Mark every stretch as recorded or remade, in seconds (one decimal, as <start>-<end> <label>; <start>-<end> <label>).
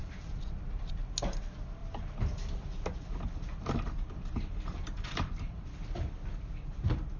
0.0-0.9 remade; 0.9-1.8 recorded; 1.8-6.1 remade; 6.1-7.2 recorded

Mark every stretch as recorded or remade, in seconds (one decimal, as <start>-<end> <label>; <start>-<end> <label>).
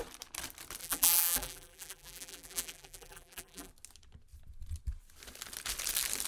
0.0-0.8 recorded; 0.8-3.7 remade; 3.7-6.3 recorded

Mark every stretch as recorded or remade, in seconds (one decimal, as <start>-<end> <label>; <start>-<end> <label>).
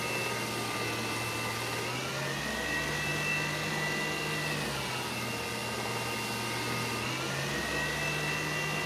0.0-8.9 recorded